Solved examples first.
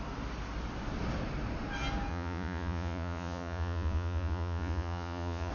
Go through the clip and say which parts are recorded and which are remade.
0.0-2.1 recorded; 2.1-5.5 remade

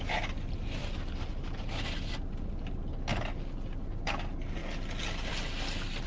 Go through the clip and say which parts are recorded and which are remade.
0.0-6.1 recorded

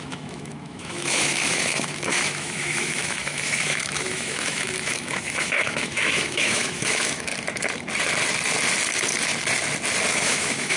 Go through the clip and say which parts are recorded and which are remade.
0.0-7.3 remade; 7.3-10.1 recorded; 10.1-10.8 remade

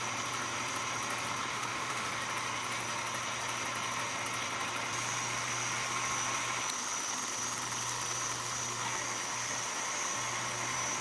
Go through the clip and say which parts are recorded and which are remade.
0.0-1.5 recorded; 1.5-2.1 remade; 2.1-11.0 recorded

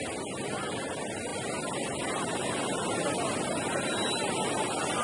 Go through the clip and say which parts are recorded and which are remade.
0.0-5.0 recorded